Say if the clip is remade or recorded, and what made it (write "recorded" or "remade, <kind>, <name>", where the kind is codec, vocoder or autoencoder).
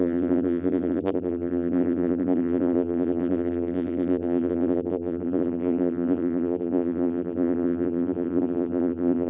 remade, vocoder, BigVGAN v2